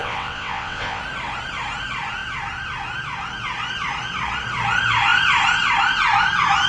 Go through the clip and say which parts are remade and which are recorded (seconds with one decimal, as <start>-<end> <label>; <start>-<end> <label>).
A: 0.0-1.0 remade; 1.0-6.7 recorded